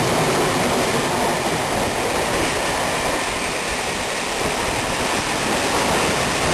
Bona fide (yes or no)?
yes